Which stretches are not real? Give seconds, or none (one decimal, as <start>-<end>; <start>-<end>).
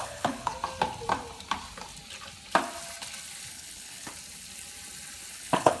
0.0-0.5; 3.5-4.1; 5.3-5.8